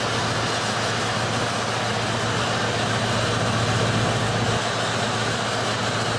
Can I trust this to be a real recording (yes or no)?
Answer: yes